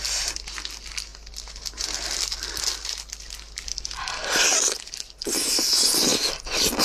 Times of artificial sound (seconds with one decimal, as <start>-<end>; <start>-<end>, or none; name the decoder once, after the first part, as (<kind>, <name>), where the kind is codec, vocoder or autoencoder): none